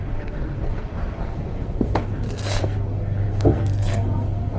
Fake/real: fake